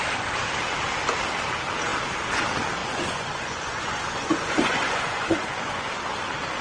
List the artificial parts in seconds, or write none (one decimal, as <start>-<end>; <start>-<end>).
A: 2.8-5.9